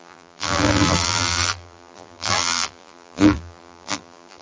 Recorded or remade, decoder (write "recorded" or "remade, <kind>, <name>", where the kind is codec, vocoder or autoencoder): remade, vocoder, BigVGAN v2